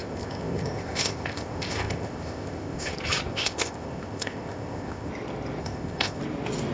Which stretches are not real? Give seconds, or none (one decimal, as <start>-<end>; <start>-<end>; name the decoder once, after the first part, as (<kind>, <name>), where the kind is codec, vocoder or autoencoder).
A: 0.0-2.9 (codec, ZipCodec); 3.3-5.1; 5.6-6.2

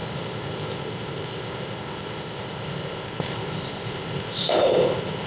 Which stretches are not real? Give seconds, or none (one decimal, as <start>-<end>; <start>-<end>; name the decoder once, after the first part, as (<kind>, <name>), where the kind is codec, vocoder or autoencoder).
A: 0.0-5.3 (codec, ZipCodec)

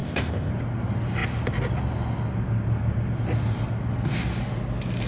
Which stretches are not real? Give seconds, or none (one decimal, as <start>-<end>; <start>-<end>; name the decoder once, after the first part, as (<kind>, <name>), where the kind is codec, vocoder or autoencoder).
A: 0.0-0.5 (codec, ZipCodec)

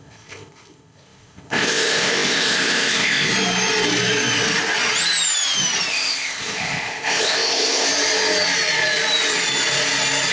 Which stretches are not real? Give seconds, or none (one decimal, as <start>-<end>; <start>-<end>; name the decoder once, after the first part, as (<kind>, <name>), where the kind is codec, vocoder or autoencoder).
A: 0.0-3.3 (codec, ZipCodec); 5.9-7.9

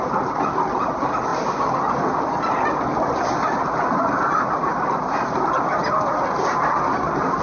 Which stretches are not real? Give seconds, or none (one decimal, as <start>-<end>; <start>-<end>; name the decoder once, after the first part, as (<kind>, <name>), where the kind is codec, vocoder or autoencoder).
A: none

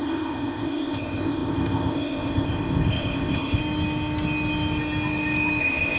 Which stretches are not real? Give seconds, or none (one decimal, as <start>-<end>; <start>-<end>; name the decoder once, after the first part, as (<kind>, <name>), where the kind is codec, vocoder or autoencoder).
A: 0.0-3.6 (codec, ZipCodec); 5.6-6.0

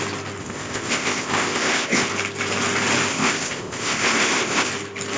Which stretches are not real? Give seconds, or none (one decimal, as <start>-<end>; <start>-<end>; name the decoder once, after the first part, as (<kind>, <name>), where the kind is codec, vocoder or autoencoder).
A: 0.4-2.1 (codec, ZipCodec); 3.1-4.7